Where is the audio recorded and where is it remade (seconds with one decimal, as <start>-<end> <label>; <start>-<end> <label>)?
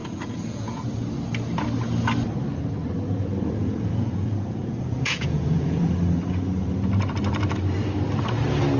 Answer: 0.0-0.8 remade; 0.8-3.6 recorded; 3.6-5.9 remade; 5.9-8.8 recorded